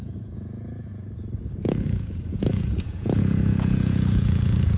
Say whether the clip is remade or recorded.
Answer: remade